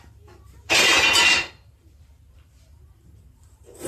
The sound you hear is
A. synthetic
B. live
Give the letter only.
A